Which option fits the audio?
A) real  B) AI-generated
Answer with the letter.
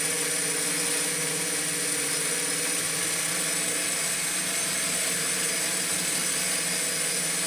A